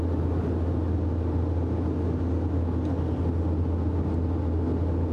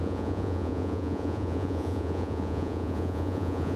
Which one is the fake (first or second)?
second